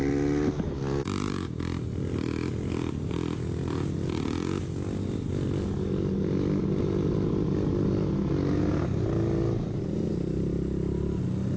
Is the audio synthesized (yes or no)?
no